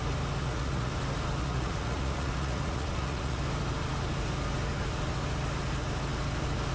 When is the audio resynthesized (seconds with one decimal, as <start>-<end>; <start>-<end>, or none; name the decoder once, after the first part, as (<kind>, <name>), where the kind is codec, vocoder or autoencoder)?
0.4-0.9 (vocoder, Vocos); 1.4-3.4

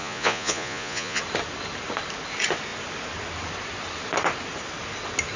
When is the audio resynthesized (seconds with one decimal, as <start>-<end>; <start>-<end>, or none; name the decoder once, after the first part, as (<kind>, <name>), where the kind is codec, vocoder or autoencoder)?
0.0-1.2 (vocoder, Vocos)

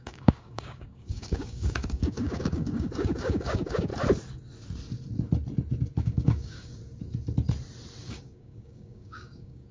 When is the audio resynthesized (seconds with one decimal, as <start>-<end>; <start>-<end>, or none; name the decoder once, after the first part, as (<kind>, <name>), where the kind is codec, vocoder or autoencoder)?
0.0-3.9 (codec, DAC); 6.0-6.8; 8.0-9.7

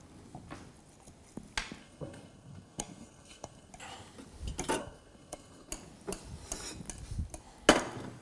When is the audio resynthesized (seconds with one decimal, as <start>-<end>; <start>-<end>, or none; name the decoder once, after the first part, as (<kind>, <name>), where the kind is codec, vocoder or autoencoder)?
1.8-3.7 (codec, SNAC); 4.8-5.7

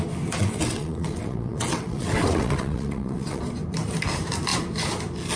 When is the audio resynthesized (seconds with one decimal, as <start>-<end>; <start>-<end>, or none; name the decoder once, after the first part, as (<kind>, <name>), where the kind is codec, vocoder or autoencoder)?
0.4-3.4 (vocoder, WaveNeXt)

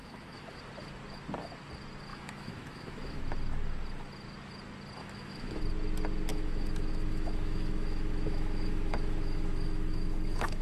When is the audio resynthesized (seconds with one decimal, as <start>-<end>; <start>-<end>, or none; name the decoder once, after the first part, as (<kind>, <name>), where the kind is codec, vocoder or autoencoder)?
0.0-0.6 (autoencoder, DAC-VAE); 2.1-3.2; 5.0-5.6; 6.3-10.6

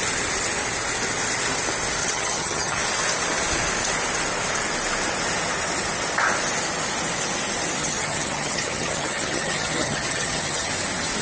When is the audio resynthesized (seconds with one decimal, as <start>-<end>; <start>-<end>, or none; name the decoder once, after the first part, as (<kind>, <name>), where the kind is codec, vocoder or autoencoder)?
2.0-2.8 (vocoder, HiFi-GAN); 7.8-10.7